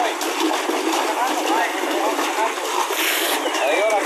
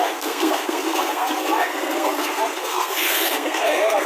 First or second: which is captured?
first